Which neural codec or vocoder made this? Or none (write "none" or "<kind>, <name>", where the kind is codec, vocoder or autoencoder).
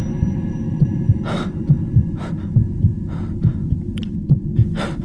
none